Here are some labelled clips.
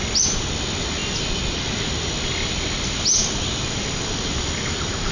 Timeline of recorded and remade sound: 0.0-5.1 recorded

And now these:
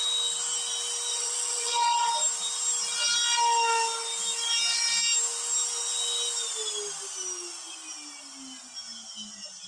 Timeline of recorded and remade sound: 0.0-1.1 recorded; 1.1-2.1 remade; 2.1-9.7 recorded

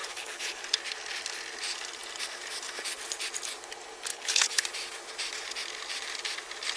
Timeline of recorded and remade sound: 0.0-0.6 remade; 0.6-4.1 recorded; 4.1-4.6 remade; 4.6-6.8 recorded

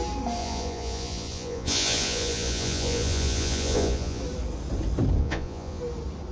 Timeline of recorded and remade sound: 0.0-0.4 recorded; 0.4-4.2 remade; 4.2-5.2 recorded; 5.2-5.8 remade; 5.8-6.3 recorded

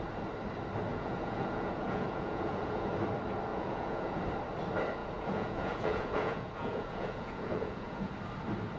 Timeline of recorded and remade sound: 0.0-0.9 recorded; 0.9-2.9 remade; 2.9-3.5 recorded; 3.5-4.2 remade; 4.2-5.0 recorded; 5.0-8.1 remade; 8.1-8.8 recorded